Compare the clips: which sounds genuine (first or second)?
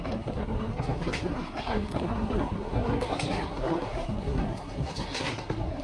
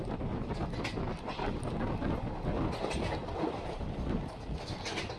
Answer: second